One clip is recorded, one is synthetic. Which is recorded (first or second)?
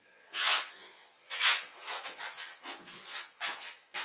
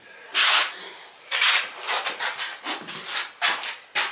second